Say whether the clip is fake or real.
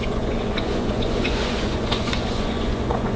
fake